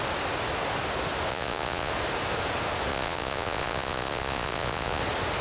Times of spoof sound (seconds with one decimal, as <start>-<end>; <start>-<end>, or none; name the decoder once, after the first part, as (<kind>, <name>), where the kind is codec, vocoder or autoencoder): 1.3-1.9 (vocoder, Vocos); 2.9-5.0